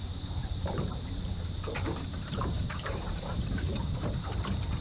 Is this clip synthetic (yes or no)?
yes